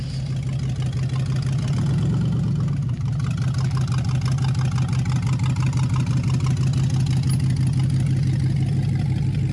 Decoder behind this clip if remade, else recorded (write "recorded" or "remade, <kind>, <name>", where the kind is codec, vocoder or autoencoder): recorded